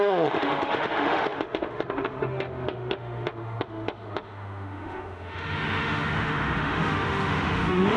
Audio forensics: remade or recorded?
remade